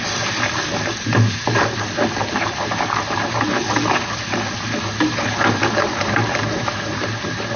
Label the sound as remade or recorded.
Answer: remade